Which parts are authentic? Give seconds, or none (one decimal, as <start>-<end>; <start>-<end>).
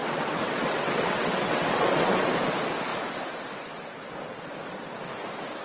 2.2-5.6